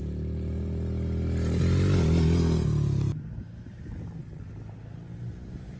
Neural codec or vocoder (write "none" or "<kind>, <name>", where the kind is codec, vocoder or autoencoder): none